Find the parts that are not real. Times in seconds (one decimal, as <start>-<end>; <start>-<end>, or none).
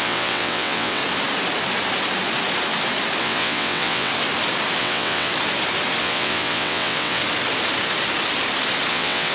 0.0-1.0; 3.2-4.1; 4.8-5.3; 6.0-7.2; 8.9-9.3